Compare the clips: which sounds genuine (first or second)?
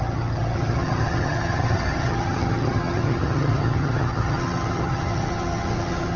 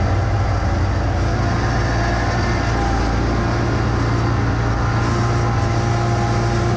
second